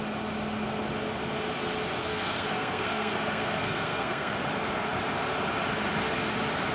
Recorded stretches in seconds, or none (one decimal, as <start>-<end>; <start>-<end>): 0.0-2.0; 4.3-6.7